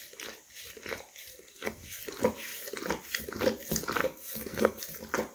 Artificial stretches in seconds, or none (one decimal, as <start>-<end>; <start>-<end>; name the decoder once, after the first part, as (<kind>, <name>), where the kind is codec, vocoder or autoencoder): 1.3-2.0 (codec, SNAC); 4.0-4.8